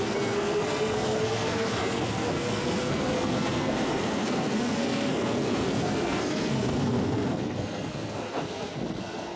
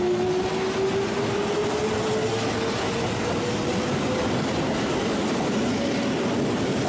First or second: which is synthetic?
first